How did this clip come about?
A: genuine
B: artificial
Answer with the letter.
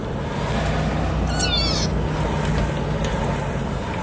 A